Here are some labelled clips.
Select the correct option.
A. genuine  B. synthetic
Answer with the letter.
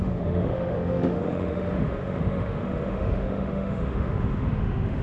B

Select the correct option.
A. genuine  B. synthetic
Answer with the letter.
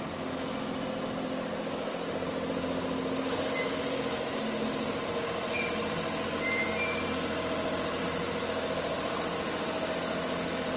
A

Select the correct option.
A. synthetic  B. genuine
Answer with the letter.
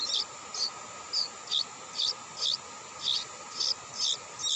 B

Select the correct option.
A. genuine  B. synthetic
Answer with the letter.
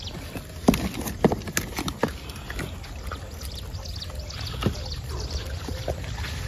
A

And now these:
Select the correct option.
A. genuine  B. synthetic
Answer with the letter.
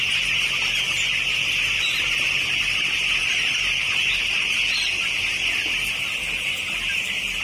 A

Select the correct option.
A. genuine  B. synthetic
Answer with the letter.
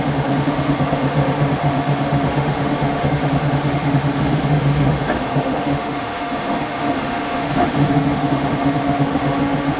B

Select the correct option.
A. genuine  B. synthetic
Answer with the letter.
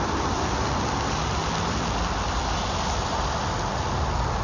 A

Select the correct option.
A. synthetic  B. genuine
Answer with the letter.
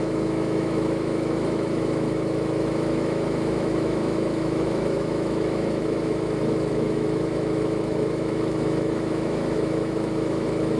A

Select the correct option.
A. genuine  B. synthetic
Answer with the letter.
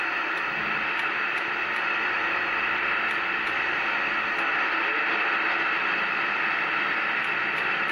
A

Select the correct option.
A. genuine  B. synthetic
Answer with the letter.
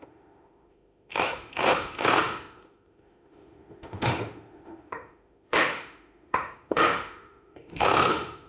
B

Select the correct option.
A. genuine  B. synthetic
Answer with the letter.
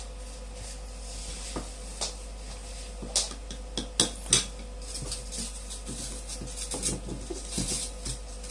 A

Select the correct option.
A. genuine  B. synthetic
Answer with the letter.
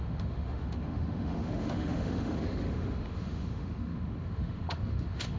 B